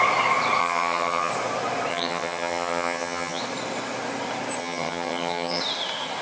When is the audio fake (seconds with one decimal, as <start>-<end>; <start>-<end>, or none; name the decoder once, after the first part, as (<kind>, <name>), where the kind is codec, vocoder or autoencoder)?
0.6-1.3 (vocoder, HiFi-GAN); 1.9-3.4; 4.6-5.6